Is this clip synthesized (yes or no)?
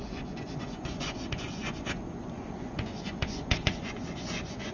yes